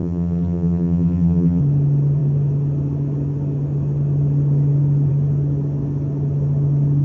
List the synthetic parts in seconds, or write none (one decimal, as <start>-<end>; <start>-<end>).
0.0-1.6